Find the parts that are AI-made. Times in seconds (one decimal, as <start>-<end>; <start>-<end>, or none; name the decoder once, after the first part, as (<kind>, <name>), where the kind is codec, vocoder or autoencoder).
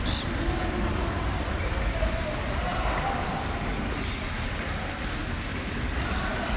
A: none